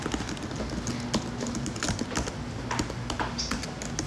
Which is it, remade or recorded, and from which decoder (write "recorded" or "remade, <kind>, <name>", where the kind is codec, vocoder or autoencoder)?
recorded